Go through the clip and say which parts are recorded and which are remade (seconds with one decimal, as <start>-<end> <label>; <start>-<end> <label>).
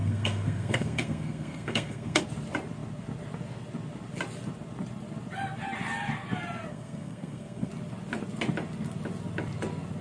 0.0-2.2 remade; 2.2-6.7 recorded; 6.7-7.7 remade; 7.7-10.0 recorded